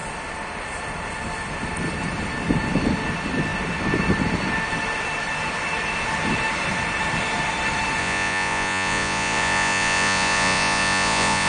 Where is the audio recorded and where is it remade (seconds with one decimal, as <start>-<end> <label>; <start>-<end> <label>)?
0.0-8.0 recorded; 8.0-11.5 remade